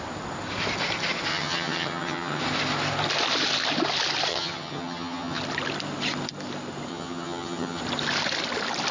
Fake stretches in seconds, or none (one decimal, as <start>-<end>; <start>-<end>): 1.3-2.4; 4.3-5.4; 6.9-7.8